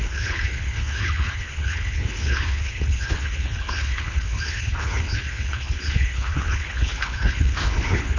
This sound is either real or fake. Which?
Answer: fake